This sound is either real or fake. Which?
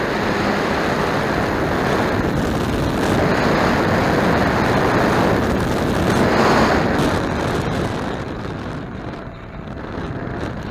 real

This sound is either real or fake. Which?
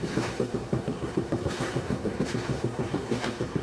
fake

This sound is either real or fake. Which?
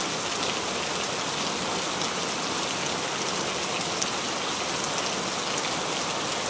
real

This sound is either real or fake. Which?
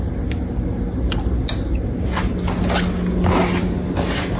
real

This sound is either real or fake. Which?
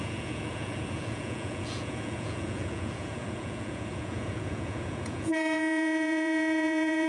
fake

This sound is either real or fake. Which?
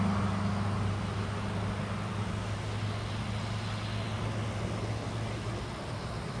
real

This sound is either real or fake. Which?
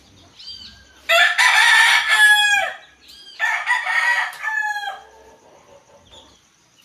real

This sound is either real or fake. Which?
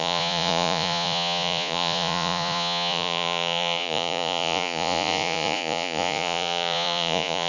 fake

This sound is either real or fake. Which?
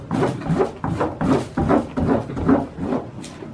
real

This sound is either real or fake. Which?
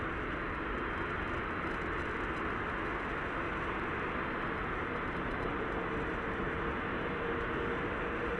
real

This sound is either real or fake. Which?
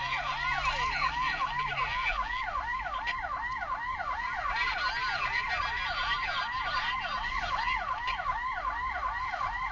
real